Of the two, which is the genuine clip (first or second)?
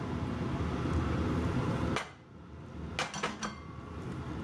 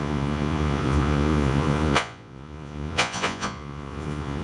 first